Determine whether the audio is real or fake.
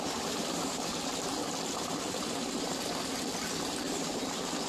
fake